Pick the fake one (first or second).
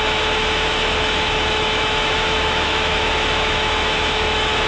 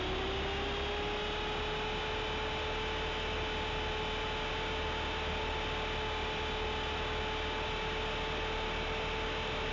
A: first